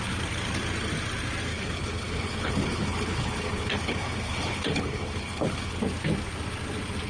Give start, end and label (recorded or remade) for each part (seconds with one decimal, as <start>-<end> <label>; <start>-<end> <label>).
0.0-1.5 recorded; 1.5-5.8 remade; 5.8-7.1 recorded